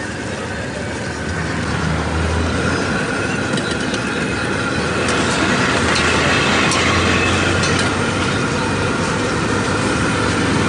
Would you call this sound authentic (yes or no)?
yes